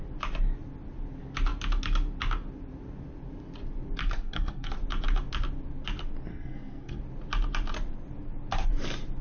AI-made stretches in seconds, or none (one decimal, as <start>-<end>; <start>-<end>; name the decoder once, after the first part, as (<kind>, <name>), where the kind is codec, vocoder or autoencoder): 4.0-4.7 (codec, SNAC); 6.3-7.0